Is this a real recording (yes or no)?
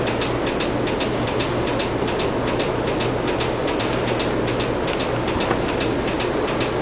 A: yes